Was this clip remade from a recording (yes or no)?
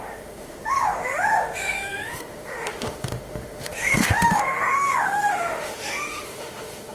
yes